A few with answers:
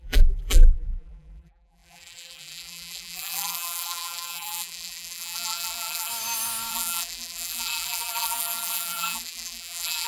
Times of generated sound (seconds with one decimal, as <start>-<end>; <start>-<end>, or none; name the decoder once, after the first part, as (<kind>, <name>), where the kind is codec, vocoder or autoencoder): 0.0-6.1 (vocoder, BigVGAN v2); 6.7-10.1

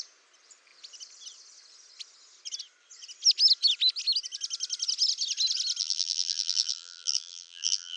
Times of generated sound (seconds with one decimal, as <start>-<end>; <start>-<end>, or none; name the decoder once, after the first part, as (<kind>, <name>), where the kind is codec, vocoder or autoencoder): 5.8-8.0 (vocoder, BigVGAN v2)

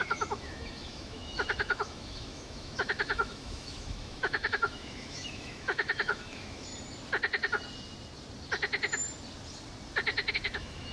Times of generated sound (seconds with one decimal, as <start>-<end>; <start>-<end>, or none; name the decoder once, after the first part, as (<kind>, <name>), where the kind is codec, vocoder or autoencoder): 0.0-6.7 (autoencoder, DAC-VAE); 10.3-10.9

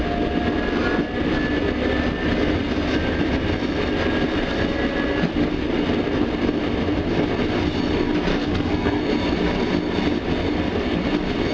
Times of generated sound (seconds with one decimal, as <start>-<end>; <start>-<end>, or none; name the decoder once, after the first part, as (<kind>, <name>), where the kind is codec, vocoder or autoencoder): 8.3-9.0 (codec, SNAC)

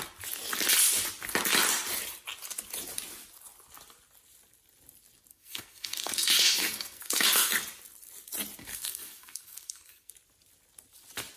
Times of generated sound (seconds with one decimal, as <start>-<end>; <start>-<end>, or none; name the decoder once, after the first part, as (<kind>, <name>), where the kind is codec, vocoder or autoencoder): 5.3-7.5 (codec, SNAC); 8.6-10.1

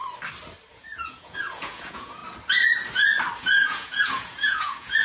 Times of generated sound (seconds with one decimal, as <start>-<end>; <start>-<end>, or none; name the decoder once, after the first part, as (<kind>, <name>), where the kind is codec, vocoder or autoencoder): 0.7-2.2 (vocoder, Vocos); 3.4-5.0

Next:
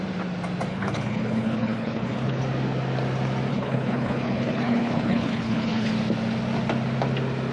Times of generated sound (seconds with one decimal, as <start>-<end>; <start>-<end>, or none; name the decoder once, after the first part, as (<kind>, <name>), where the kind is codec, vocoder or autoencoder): 0.7-2.4 (codec, HILCodec); 3.5-5.9

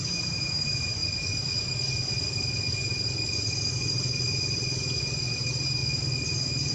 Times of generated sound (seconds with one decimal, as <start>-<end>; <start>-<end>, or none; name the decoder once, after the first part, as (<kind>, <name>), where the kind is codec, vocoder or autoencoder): 0.0-1.0 (vocoder, BigVGAN v2); 5.0-5.8